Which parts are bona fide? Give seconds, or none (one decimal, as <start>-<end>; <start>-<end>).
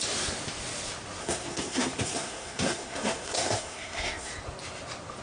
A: 0.0-1.2; 4.3-5.2